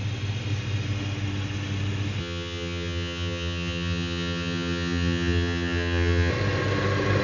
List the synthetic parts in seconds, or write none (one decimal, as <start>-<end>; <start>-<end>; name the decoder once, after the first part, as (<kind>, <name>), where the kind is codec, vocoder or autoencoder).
2.2-6.3 (vocoder, HiFi-GAN)